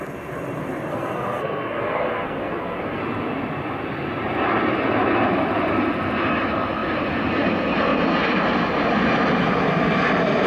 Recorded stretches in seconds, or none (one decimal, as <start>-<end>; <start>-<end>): 0.0-0.9; 3.0-10.5